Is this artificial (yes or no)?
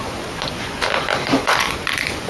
yes